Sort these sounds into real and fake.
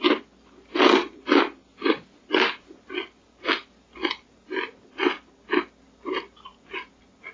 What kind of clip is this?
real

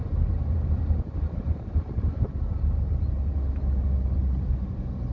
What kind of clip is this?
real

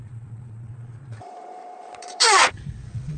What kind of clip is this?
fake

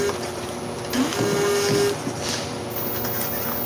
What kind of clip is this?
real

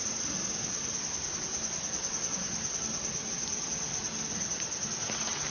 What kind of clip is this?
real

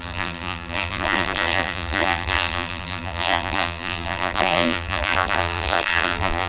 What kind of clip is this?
fake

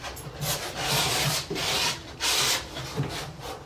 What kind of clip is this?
fake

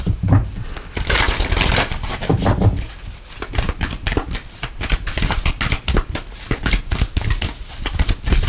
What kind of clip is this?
real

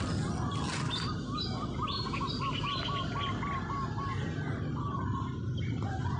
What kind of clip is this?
real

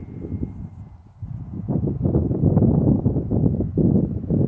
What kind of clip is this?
real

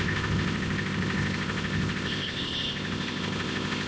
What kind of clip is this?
fake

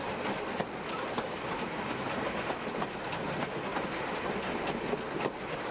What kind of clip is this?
real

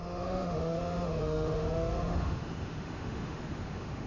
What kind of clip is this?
fake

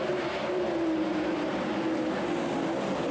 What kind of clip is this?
real